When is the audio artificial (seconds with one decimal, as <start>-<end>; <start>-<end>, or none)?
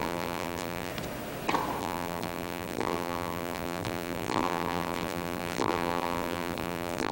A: 0.0-0.9; 1.8-7.1